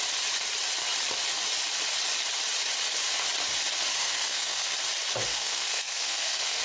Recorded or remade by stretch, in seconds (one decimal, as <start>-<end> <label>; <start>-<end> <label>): 0.0-4.0 recorded; 4.0-4.7 remade; 4.7-5.3 recorded; 5.3-6.6 remade